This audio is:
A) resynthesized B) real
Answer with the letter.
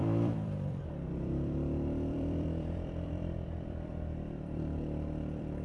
A